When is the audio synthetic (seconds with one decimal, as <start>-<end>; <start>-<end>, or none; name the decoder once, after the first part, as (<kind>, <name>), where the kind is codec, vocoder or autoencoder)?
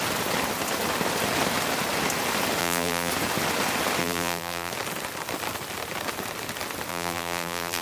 2.6-3.1 (vocoder, BigVGAN v2); 4.0-4.7; 6.9-7.8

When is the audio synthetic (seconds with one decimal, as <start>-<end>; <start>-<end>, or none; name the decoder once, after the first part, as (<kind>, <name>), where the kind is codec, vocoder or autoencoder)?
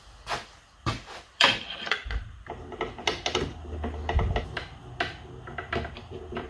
0.0-2.0 (vocoder, BigVGAN v2); 5.9-6.5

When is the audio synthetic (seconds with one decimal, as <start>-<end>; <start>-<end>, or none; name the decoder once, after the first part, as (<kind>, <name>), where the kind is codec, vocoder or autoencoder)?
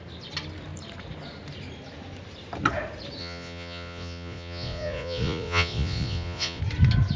3.2-6.6 (vocoder, Vocos)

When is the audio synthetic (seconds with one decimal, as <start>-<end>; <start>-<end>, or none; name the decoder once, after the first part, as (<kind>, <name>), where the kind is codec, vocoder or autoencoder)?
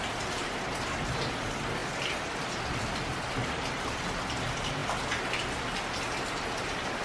3.4-4.0 (vocoder, BigVGAN v2)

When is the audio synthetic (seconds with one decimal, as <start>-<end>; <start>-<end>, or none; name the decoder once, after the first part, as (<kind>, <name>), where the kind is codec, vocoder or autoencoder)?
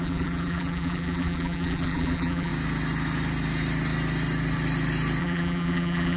0.0-2.5 (vocoder, BigVGAN v2); 5.2-6.2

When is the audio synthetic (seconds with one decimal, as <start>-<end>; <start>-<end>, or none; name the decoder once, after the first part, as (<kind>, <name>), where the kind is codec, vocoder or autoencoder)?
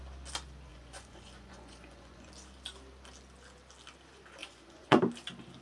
0.7-2.3 (vocoder, Vocos); 4.4-5.0